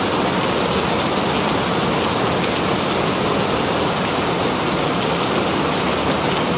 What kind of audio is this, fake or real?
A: real